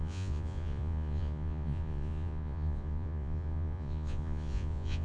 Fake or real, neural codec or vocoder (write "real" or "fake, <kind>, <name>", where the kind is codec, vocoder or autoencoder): fake, vocoder, Vocos